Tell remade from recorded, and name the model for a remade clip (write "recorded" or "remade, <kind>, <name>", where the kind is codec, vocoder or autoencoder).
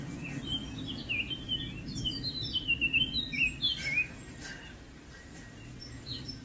recorded